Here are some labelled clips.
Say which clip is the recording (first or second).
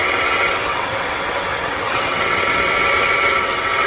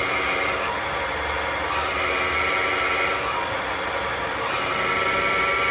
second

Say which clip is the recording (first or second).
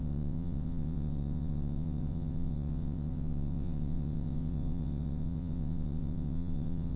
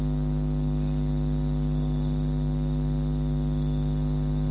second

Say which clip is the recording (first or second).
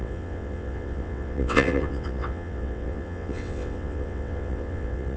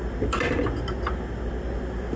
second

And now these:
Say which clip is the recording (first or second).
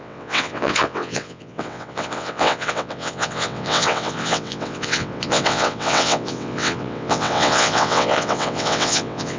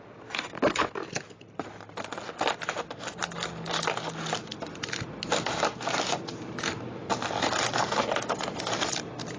second